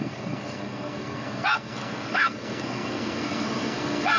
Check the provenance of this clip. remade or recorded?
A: remade